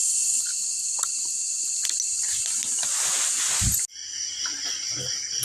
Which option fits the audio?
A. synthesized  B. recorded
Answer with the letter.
B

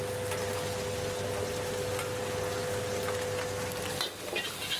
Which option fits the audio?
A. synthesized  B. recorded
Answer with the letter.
B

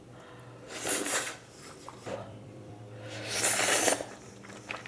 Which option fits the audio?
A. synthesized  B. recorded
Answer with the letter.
A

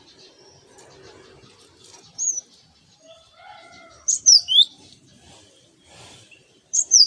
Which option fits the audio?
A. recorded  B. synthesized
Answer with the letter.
B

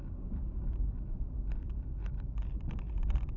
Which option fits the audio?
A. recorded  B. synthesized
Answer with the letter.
A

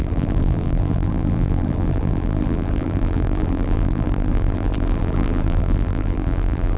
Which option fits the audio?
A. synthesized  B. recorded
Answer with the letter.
A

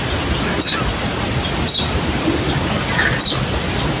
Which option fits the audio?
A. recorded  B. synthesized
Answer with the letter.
B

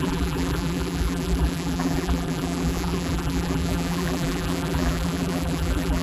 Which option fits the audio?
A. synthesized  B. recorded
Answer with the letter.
A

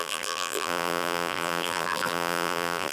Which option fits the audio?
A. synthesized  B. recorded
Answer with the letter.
A